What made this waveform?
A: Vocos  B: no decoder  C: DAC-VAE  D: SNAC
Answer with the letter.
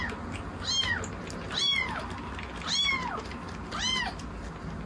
B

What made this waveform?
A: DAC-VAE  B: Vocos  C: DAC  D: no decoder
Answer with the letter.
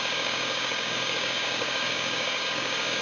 C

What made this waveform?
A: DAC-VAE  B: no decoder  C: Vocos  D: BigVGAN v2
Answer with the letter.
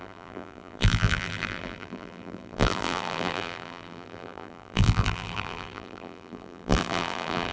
D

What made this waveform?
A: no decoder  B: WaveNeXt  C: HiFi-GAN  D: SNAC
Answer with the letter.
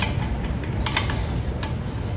A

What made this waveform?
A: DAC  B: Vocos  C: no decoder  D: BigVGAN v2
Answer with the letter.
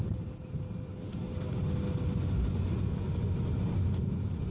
C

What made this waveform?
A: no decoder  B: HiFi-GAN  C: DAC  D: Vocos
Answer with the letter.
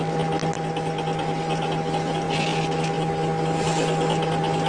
A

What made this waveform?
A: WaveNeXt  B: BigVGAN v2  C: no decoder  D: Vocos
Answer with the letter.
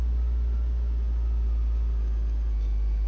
C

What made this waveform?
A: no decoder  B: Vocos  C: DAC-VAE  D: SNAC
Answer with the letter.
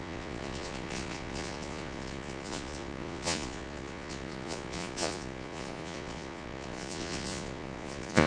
B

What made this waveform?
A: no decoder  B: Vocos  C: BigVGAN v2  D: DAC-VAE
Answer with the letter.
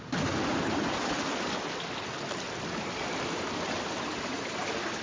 A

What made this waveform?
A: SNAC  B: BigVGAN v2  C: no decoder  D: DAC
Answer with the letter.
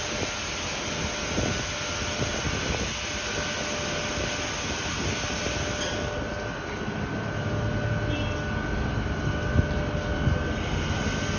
C